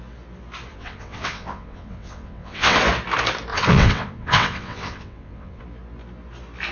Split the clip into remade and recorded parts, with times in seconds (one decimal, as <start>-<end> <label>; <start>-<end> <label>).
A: 0.0-0.7 recorded; 0.7-2.8 remade; 2.8-3.5 recorded; 3.5-5.6 remade; 5.6-6.7 recorded